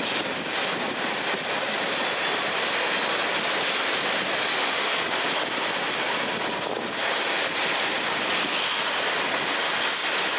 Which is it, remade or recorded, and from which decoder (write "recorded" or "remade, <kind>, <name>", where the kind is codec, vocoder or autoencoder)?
recorded